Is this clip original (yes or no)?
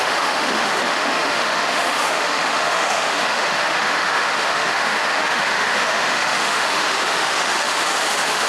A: no